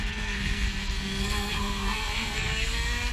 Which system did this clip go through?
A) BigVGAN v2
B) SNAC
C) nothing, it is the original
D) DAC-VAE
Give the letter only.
B